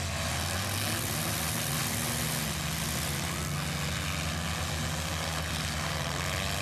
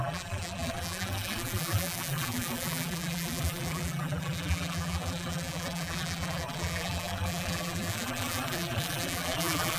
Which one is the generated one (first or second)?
second